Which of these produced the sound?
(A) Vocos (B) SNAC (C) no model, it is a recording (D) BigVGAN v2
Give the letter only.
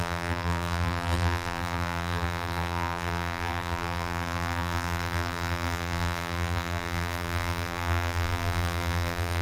D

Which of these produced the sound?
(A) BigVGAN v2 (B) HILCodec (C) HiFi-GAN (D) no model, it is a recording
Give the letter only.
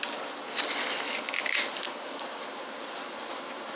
D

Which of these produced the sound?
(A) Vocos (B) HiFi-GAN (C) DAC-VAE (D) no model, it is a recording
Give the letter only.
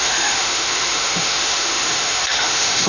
C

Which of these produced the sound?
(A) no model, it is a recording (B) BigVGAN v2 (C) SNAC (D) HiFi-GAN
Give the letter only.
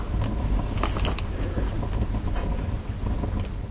A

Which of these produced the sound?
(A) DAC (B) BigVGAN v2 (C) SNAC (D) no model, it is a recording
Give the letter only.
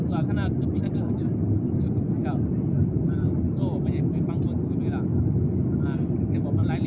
D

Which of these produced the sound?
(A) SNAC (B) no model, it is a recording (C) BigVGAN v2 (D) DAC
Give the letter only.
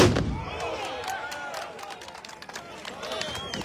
B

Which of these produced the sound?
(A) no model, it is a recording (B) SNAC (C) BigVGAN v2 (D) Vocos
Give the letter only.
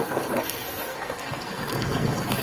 B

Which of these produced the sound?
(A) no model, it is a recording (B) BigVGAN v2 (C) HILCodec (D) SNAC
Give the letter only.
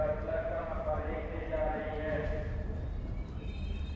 B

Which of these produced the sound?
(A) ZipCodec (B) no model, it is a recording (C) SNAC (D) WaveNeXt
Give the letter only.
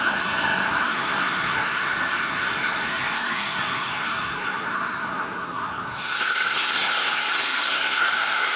C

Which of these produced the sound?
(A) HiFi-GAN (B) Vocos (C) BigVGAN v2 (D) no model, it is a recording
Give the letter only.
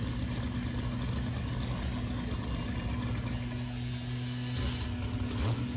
D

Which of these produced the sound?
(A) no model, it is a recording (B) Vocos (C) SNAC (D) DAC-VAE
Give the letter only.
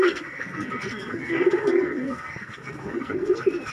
C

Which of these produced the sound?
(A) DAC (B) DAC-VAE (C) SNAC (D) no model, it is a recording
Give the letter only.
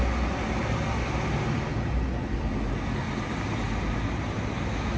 D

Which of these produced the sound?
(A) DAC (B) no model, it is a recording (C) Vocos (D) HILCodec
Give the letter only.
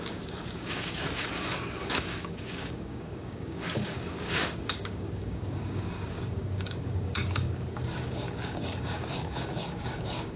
A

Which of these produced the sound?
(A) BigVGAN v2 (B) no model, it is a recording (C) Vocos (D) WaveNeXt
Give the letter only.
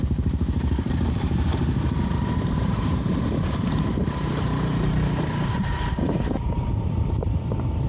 A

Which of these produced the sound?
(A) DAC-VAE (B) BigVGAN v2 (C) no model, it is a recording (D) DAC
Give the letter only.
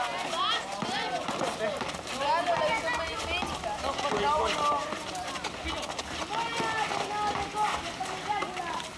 C